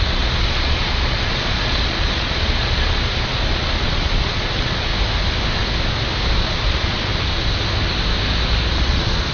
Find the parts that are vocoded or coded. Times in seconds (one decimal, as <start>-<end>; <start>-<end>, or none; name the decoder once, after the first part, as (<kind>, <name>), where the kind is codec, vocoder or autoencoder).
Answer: 0.0-4.9 (vocoder, Vocos); 6.4-7.1; 8.7-9.3